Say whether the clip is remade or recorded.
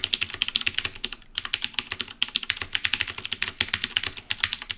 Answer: recorded